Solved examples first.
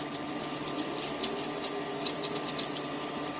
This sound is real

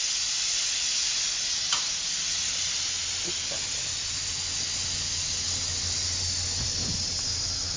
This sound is real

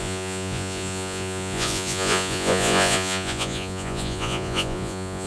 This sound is fake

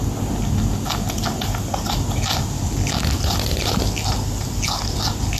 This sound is real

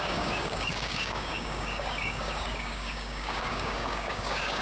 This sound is fake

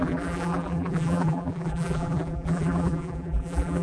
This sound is fake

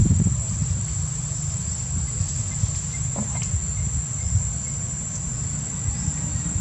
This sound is real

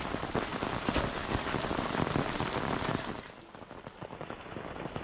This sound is real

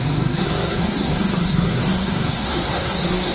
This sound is fake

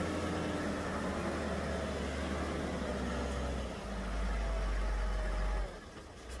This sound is real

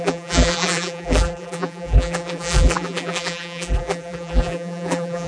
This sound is fake